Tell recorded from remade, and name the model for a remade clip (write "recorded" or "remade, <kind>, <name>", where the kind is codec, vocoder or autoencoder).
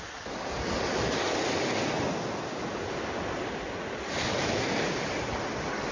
recorded